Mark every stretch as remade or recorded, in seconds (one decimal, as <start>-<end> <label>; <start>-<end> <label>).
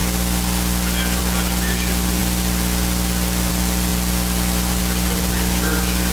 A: 0.0-6.1 recorded